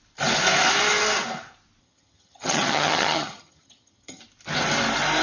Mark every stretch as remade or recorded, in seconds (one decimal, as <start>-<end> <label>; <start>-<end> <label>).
0.0-1.8 recorded; 1.8-4.2 remade; 4.2-5.2 recorded